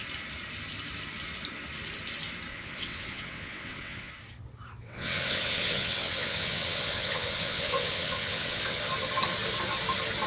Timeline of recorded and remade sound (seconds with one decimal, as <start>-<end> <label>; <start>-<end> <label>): 0.0-2.5 recorded; 2.5-4.1 remade; 4.1-4.8 recorded; 4.8-8.8 remade; 8.8-10.3 recorded